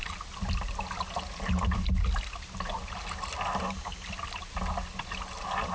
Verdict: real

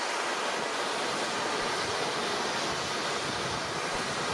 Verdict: real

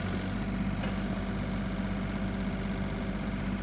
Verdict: real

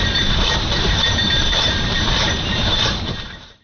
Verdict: fake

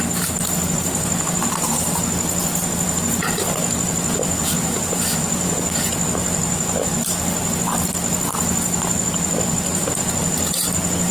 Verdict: real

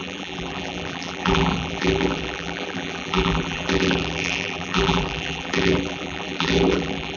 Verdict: fake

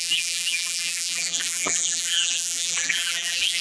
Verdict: fake